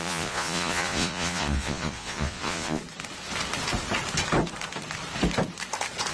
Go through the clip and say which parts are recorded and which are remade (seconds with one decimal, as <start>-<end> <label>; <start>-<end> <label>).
0.0-2.8 remade; 2.8-6.1 recorded